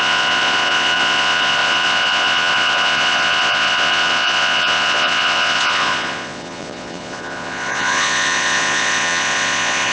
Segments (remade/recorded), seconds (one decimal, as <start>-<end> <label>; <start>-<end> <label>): 0.0-9.9 remade

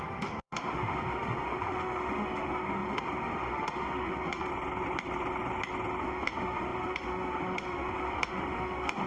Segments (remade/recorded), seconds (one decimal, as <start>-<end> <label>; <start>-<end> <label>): 0.0-4.5 remade; 4.5-6.0 recorded; 6.0-9.1 remade